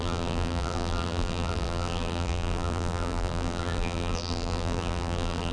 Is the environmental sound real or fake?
fake